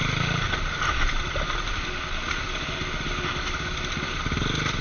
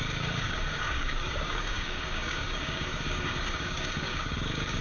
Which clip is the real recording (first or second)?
first